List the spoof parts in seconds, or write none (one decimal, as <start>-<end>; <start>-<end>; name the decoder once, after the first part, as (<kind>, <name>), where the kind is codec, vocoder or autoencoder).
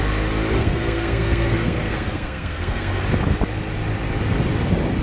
0.6-3.0 (codec, SNAC)